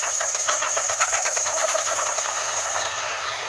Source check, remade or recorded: remade